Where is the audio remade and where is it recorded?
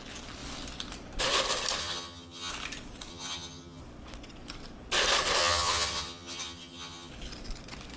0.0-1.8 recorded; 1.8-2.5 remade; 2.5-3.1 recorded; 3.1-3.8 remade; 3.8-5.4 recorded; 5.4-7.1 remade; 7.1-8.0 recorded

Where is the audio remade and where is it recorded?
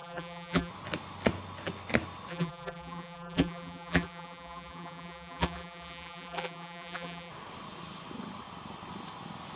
0.0-0.7 remade; 0.7-2.3 recorded; 2.3-7.3 remade; 7.3-9.6 recorded